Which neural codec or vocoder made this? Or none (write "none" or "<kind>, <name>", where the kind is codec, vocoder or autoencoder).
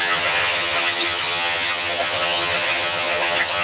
vocoder, HiFi-GAN